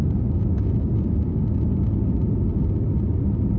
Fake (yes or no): no